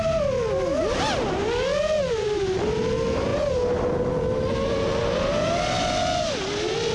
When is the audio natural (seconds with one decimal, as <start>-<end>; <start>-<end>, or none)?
0.0-6.9